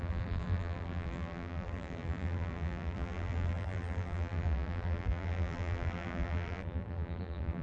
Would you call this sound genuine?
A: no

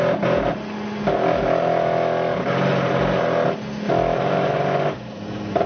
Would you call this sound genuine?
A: yes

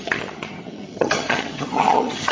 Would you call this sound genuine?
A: no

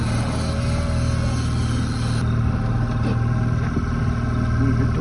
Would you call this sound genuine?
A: yes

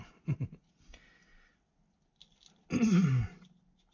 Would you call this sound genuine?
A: yes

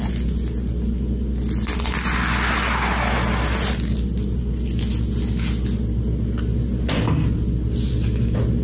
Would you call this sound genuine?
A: yes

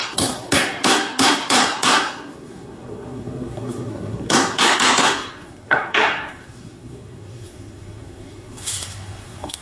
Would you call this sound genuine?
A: no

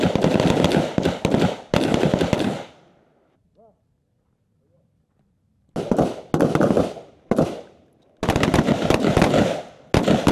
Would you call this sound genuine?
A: yes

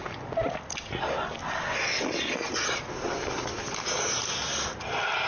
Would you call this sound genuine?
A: yes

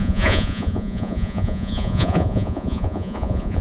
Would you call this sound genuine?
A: no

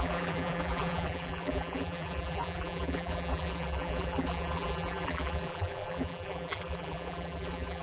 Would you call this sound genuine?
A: no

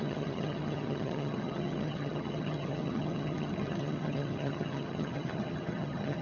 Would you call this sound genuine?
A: no